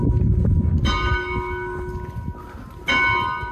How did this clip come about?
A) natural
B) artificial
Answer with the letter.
A